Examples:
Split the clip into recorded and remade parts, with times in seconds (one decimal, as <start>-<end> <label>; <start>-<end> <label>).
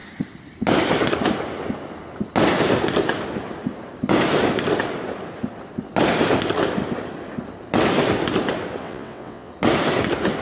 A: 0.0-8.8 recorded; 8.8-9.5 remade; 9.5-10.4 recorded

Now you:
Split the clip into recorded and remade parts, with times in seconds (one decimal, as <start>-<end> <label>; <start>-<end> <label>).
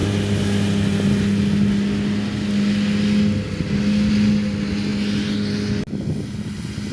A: 0.0-6.9 recorded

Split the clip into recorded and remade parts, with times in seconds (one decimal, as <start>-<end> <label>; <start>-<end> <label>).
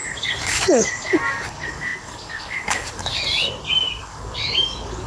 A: 0.0-3.1 remade; 3.1-3.7 recorded; 3.7-5.1 remade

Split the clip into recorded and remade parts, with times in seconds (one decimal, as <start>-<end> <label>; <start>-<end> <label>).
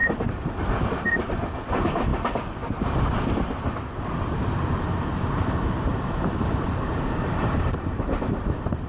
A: 0.0-1.7 remade; 1.7-5.1 recorded; 5.1-8.2 remade; 8.2-8.9 recorded